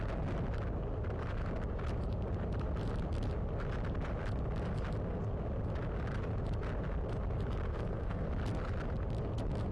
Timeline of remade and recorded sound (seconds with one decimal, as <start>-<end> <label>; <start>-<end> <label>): 0.0-7.7 recorded; 7.7-8.3 remade; 8.3-9.7 recorded